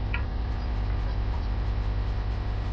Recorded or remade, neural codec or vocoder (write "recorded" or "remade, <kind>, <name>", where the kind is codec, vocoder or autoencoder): recorded